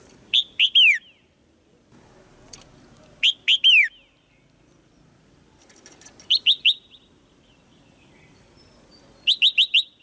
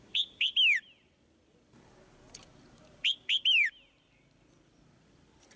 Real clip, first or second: first